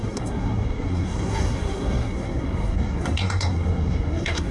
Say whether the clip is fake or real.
fake